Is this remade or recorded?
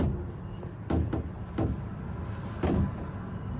recorded